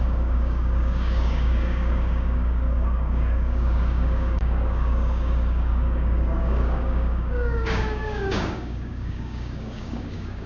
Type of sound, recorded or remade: remade